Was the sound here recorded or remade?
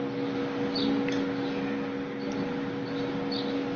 recorded